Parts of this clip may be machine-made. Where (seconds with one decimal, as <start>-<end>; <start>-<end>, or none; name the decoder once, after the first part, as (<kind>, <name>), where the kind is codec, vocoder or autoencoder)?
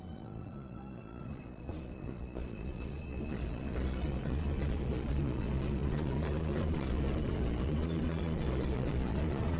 0.0-9.6 (vocoder, Vocos)